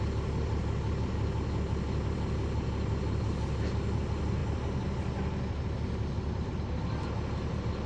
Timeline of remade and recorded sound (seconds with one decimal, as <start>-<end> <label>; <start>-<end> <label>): 0.0-7.9 recorded